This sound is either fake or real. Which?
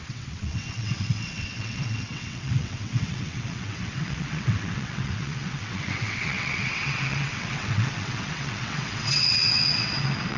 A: fake